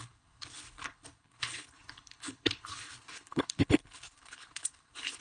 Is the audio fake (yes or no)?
yes